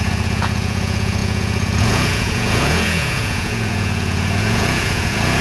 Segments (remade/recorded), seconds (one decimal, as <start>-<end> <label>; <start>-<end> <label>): 0.0-5.4 remade